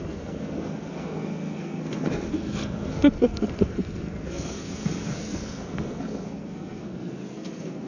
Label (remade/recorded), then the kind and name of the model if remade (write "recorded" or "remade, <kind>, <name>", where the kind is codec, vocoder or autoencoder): remade, codec, SNAC